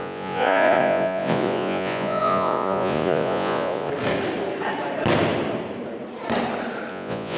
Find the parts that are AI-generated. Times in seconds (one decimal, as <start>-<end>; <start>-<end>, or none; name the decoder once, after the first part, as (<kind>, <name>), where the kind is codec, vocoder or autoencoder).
0.0-3.9 (vocoder, Vocos); 6.9-7.4